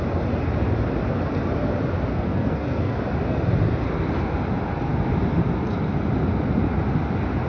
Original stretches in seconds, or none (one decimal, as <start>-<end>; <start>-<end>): 0.0-2.1; 3.0-7.5